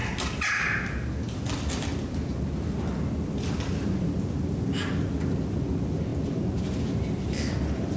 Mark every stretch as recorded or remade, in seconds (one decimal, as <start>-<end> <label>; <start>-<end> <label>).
0.0-8.0 recorded